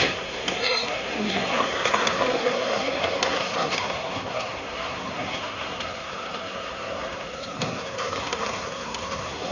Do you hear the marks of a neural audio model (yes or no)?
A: yes